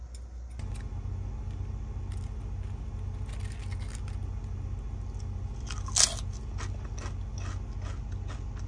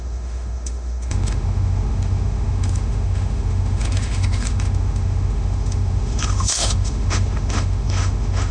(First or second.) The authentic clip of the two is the first